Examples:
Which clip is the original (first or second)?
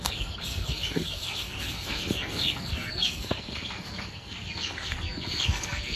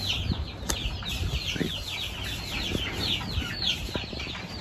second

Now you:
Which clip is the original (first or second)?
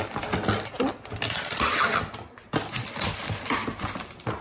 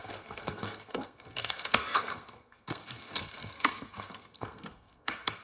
first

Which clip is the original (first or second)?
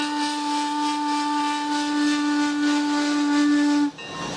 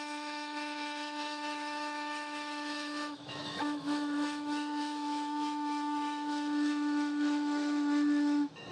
first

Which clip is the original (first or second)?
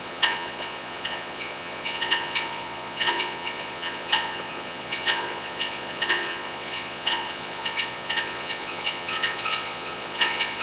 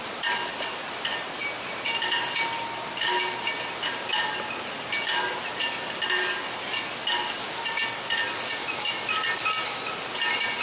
second